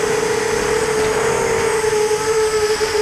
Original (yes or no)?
yes